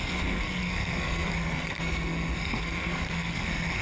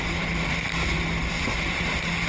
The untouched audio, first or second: second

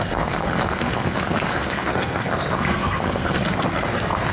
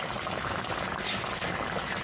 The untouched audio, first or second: second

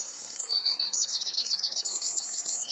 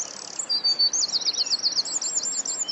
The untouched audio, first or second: second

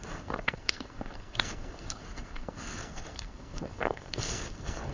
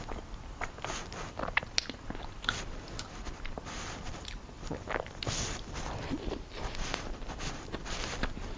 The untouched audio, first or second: second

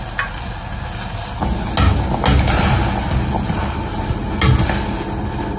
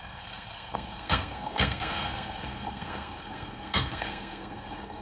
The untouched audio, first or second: first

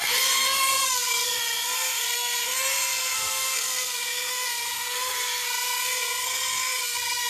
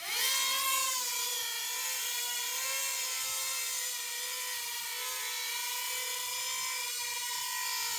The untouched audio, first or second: second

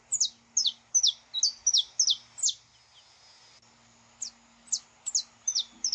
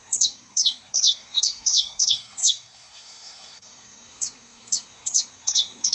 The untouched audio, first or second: first